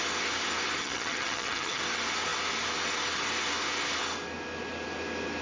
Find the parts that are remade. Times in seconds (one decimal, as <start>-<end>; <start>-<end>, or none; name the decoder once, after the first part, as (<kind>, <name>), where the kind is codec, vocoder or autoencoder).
0.8-1.8 (vocoder, HiFi-GAN)